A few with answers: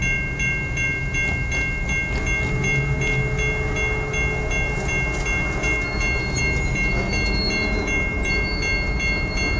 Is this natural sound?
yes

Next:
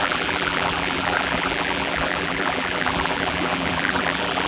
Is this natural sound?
no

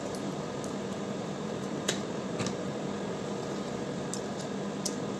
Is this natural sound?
no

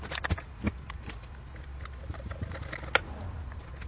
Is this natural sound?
yes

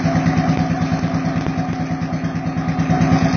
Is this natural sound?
yes